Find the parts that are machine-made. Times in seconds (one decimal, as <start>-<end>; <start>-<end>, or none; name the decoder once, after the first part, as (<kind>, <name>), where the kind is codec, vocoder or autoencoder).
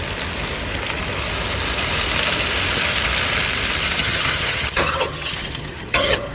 4.0-6.3 (vocoder, HiFi-GAN)